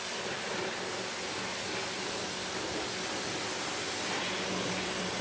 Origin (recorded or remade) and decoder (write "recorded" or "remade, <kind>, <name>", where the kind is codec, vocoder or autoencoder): recorded